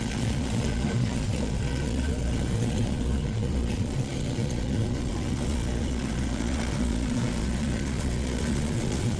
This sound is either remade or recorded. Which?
remade